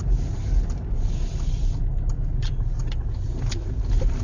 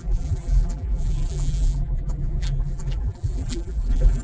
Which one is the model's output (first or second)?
second